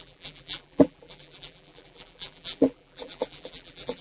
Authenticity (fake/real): fake